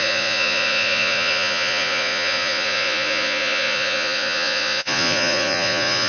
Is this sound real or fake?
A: fake